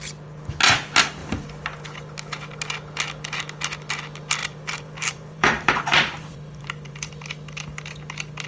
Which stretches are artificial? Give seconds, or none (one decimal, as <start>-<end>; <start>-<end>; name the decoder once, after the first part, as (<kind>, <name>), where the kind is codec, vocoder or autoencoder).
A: 4.4-7.1 (vocoder, BigVGAN v2)